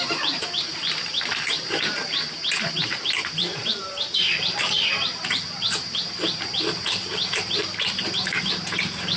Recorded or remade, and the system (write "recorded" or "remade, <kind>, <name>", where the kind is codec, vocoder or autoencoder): remade, vocoder, BigVGAN v2